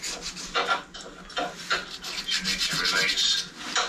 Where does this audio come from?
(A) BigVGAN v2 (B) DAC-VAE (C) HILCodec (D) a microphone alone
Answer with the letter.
D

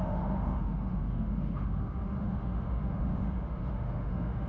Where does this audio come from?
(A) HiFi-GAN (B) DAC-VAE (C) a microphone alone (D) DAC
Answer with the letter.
B